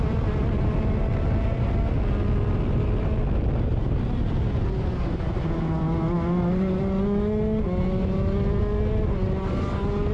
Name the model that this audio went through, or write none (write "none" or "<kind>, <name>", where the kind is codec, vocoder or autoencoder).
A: none